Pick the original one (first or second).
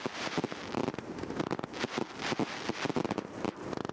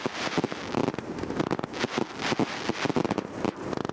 second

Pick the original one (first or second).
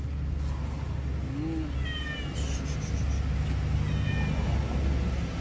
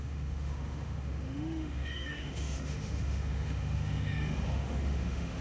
first